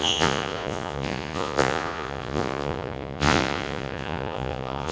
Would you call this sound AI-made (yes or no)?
yes